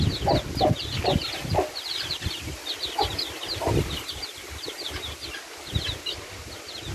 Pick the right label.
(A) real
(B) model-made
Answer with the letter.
A